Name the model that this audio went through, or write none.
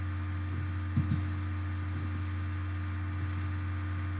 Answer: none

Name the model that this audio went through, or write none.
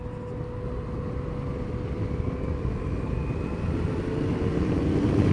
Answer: none